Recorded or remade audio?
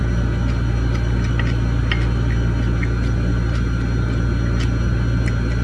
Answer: recorded